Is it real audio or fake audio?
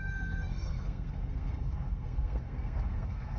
fake